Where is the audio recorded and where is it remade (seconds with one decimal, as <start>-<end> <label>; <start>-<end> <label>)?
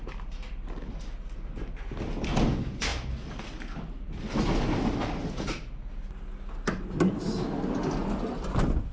0.0-8.9 recorded